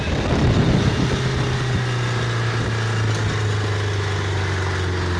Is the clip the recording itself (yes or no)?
yes